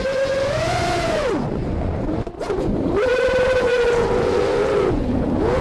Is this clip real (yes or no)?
no